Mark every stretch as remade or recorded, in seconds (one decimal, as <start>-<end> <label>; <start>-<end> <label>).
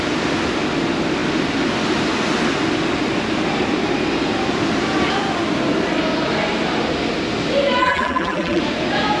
0.0-7.8 recorded; 7.8-8.6 remade; 8.6-9.2 recorded